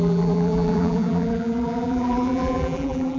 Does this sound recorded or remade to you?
remade